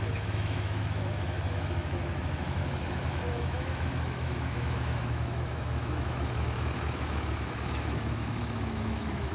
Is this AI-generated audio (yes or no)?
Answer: yes